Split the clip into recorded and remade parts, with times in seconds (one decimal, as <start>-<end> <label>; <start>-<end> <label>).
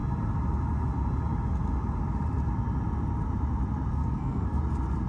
0.0-3.9 recorded; 3.9-4.6 remade; 4.6-5.1 recorded